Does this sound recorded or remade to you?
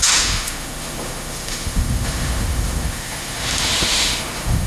remade